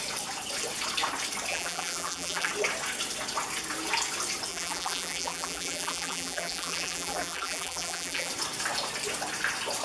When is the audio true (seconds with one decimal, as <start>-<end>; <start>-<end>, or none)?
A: 0.0-1.5; 2.5-4.5; 8.3-9.8